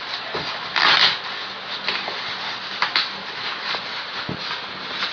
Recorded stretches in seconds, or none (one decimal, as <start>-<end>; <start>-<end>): 0.0-5.1